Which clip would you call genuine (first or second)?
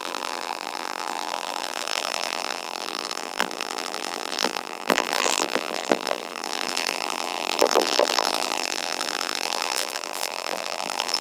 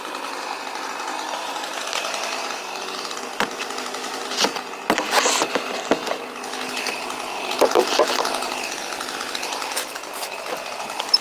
second